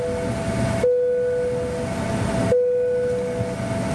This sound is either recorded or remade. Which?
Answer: recorded